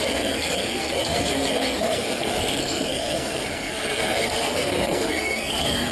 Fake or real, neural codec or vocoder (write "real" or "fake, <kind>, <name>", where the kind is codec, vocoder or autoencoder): fake, codec, SNAC